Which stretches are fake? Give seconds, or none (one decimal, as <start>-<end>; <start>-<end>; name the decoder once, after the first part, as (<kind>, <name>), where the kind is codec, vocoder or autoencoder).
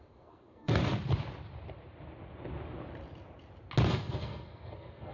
0.0-0.8 (codec, SNAC); 3.9-5.1